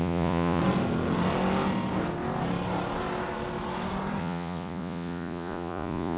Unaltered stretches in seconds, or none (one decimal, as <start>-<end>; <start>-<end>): 0.6-4.2